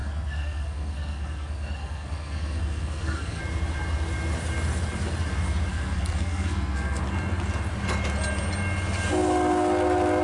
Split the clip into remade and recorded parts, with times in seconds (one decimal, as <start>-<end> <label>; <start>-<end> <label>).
0.0-3.4 remade; 3.4-5.7 recorded; 5.7-7.0 remade; 7.0-10.2 recorded